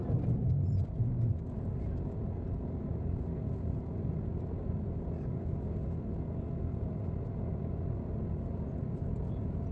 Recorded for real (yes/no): yes